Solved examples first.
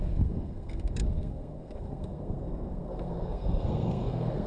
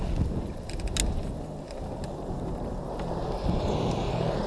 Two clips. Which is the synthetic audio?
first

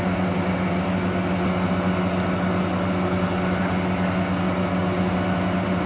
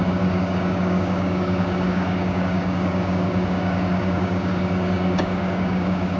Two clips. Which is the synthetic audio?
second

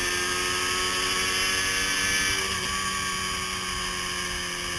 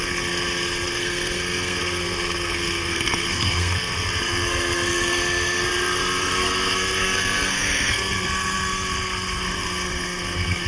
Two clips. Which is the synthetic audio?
second